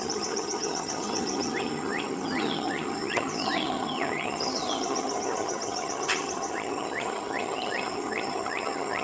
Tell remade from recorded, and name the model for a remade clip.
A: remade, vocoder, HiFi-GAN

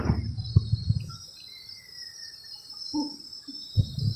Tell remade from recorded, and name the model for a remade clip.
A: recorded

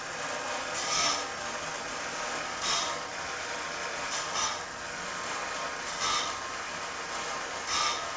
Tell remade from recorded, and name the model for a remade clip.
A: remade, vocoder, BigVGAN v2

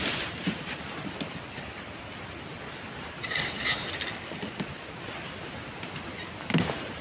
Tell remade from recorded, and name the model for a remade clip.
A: recorded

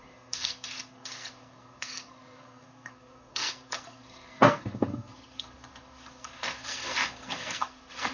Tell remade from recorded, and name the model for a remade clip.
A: remade, codec, SNAC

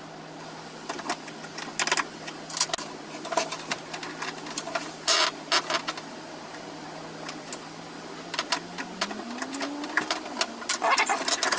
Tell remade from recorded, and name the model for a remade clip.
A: recorded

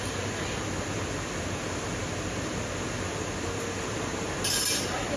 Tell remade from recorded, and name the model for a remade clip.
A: recorded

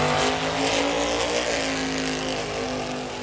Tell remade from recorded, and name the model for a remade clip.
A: recorded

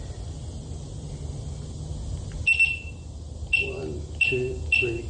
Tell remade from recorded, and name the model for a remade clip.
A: recorded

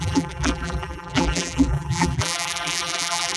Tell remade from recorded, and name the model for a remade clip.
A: remade, vocoder, BigVGAN v2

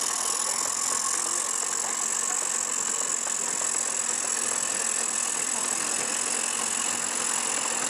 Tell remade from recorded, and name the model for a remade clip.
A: recorded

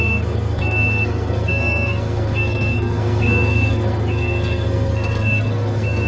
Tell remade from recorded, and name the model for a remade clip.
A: remade, codec, SNAC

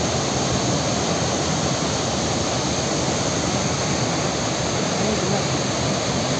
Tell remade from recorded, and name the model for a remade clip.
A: recorded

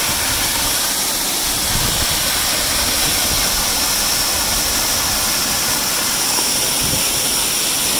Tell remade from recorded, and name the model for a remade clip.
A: recorded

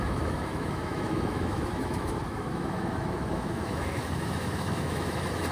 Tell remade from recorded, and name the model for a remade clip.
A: remade, autoencoder, DAC-VAE